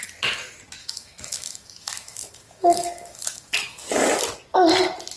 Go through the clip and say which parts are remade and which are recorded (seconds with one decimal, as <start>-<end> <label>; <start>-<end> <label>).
0.0-0.8 recorded; 0.8-3.9 remade; 3.9-5.2 recorded